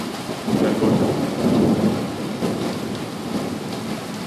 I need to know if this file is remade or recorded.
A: recorded